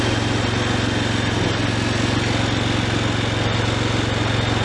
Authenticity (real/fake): real